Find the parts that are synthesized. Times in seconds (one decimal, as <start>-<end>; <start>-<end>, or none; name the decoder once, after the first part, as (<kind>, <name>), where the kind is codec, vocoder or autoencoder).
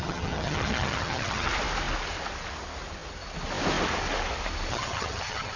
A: 0.0-1.5 (vocoder, HiFi-GAN); 4.7-5.6